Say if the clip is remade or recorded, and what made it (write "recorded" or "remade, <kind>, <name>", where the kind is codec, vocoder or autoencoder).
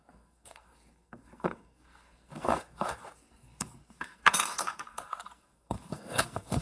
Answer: remade, codec, SNAC